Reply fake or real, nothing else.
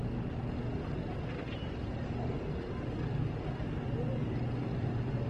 real